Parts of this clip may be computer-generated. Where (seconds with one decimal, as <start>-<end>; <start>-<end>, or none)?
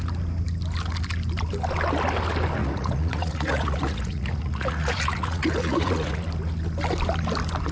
2.6-6.2